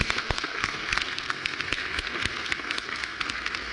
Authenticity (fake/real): fake